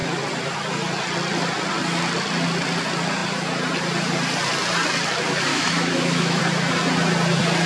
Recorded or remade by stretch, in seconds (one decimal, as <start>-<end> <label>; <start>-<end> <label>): 0.0-5.5 recorded; 5.5-6.4 remade; 6.4-7.7 recorded